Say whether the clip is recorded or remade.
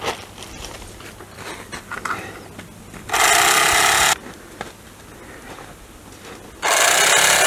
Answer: recorded